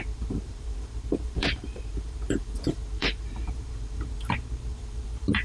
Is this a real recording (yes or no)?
no